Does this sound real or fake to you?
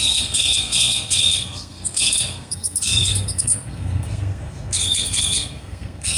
fake